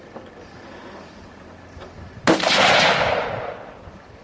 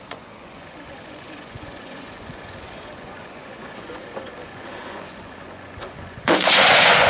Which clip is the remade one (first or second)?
second